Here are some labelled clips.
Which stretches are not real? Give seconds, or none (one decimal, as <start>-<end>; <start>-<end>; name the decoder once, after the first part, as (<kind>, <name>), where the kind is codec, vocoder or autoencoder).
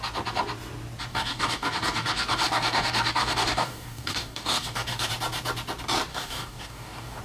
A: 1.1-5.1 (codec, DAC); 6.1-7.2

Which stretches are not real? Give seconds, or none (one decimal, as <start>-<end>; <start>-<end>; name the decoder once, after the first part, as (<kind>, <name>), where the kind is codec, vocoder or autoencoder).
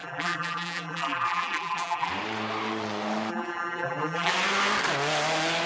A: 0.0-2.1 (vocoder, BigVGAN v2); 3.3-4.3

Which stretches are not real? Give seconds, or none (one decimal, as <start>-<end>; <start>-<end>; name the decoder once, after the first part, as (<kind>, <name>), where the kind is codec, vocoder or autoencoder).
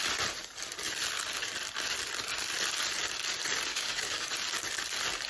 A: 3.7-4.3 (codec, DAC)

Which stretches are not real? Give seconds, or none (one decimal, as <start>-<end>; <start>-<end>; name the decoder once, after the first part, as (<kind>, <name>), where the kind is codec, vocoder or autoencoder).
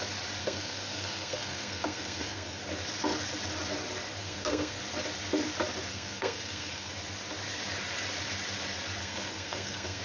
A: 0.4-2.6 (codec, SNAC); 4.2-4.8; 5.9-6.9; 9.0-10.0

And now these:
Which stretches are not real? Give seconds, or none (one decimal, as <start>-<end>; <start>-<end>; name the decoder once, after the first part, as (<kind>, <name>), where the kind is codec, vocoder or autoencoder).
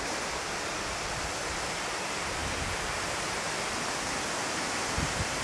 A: none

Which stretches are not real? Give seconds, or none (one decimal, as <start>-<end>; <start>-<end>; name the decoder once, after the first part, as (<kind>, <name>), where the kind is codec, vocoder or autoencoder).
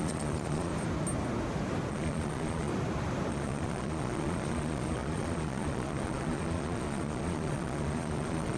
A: 0.0-0.7 (vocoder, Vocos); 1.9-2.7; 3.3-8.6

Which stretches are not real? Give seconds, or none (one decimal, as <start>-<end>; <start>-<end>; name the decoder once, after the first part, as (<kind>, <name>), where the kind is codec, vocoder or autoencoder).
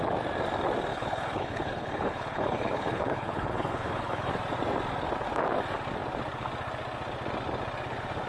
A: 0.9-4.3 (codec, HILCodec)